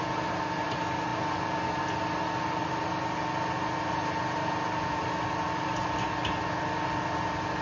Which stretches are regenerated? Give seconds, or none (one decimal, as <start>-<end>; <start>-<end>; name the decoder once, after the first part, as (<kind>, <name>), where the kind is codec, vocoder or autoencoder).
none